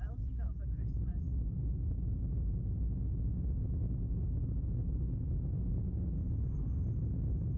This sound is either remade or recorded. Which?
recorded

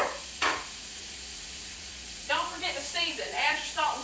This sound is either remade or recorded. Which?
remade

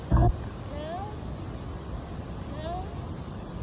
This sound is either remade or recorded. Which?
recorded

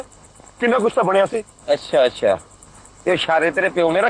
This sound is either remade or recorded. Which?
remade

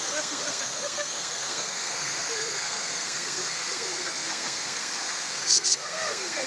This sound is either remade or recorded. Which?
remade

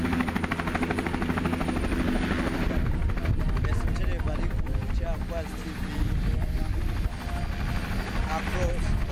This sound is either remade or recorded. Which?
recorded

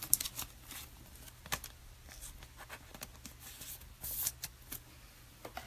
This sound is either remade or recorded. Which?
recorded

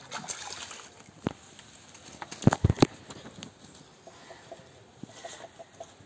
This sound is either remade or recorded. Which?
recorded